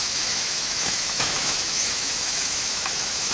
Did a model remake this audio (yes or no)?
yes